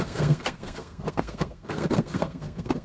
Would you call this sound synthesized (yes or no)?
yes